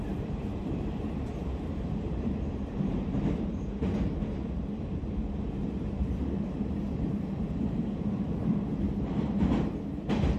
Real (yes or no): no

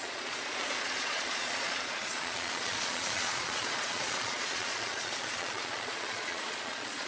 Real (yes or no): no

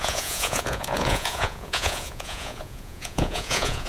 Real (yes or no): no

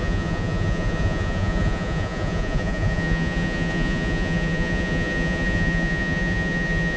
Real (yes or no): no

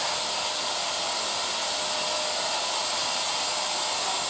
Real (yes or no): yes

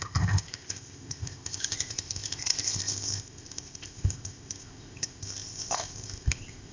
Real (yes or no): no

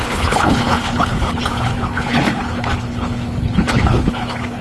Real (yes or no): no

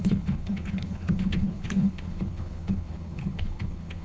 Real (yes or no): no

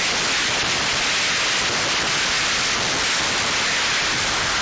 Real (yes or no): yes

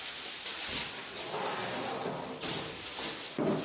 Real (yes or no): yes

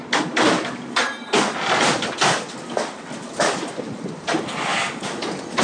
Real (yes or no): yes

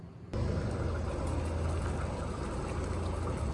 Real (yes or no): yes